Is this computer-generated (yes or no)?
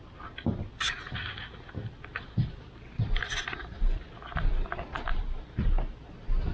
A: no